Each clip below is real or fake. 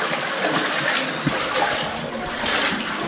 real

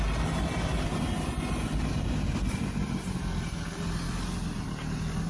real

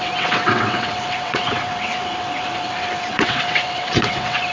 fake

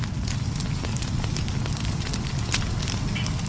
real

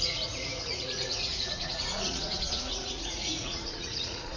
fake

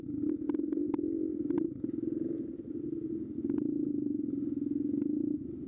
real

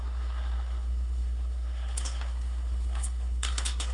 fake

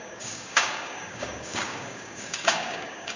fake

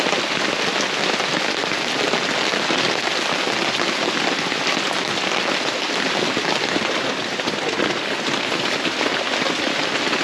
real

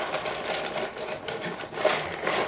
real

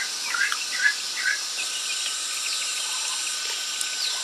real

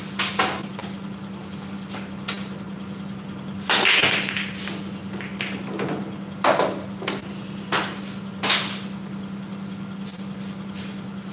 real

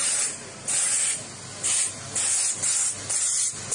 real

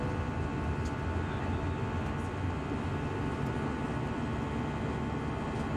real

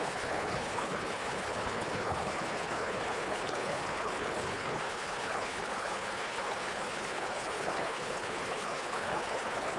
fake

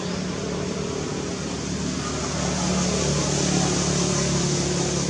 real